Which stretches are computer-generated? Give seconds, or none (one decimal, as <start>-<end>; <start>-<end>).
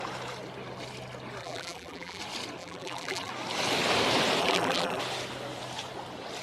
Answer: 1.4-2.2; 2.6-3.3; 4.4-5.0